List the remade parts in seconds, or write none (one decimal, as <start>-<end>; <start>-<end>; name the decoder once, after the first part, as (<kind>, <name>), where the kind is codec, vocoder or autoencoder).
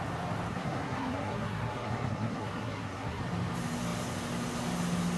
0.5-3.2 (codec, SNAC)